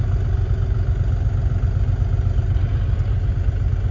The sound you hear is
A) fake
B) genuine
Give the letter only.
B